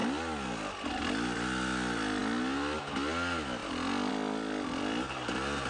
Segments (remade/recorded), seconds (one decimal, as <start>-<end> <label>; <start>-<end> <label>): 0.0-5.7 recorded